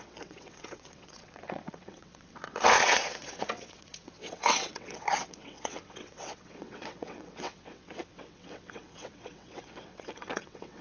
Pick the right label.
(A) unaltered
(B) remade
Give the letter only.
B